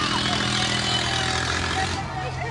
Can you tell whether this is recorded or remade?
recorded